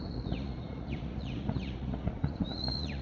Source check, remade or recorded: remade